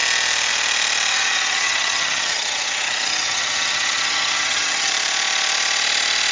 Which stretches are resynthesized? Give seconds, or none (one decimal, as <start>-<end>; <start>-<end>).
1.1-4.9